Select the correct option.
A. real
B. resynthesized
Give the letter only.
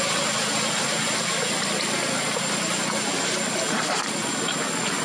A